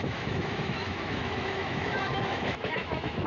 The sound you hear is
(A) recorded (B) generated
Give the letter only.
B